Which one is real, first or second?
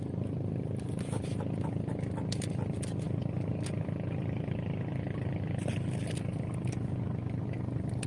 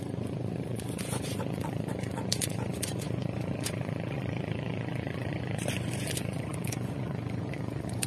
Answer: first